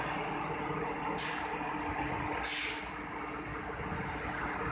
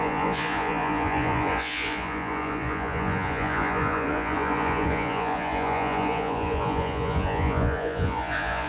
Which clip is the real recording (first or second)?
first